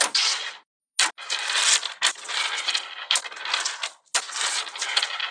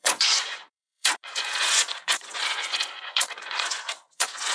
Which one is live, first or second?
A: first